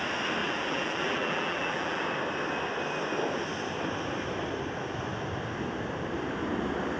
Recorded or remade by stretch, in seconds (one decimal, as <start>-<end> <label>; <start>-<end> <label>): 0.0-0.4 recorded; 0.4-2.0 remade; 2.0-7.0 recorded

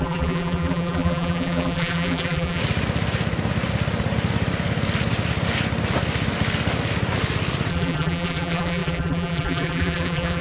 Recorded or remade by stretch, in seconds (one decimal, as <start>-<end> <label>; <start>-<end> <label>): 0.0-2.6 remade; 2.6-7.7 recorded; 7.7-10.4 remade

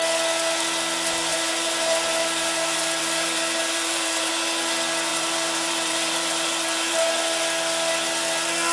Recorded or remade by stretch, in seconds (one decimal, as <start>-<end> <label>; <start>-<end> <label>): 0.0-1.3 recorded; 1.3-4.3 remade; 4.3-5.1 recorded; 5.1-7.2 remade; 7.2-8.7 recorded

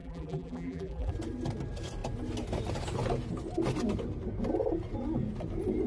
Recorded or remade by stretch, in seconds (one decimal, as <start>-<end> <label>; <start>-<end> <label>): 0.0-1.1 remade; 1.1-5.9 recorded

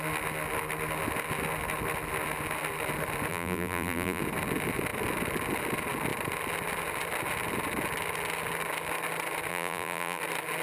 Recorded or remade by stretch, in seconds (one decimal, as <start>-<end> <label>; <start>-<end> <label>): 0.0-3.3 recorded; 3.3-4.2 remade; 4.2-9.5 recorded; 9.5-10.2 remade; 10.2-10.6 recorded

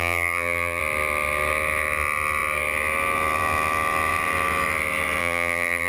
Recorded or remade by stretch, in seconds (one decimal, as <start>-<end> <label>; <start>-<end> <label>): 0.0-0.8 remade; 0.8-5.2 recorded; 5.2-5.9 remade

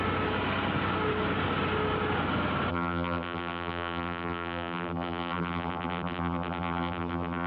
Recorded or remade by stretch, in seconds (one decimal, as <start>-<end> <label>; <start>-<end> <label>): 0.0-2.7 recorded; 2.7-7.5 remade